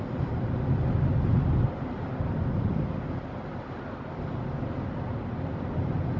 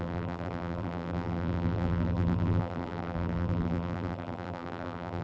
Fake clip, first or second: second